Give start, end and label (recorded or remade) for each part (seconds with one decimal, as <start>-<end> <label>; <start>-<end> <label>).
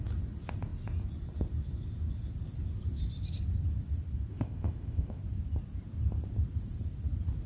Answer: 0.0-4.3 recorded; 4.3-5.2 remade; 5.2-7.5 recorded